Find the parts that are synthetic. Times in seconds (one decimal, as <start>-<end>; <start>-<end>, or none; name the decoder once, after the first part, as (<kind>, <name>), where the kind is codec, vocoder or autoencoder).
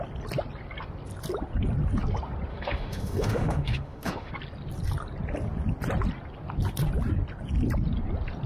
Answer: 2.5-4.3 (autoencoder, DAC-VAE)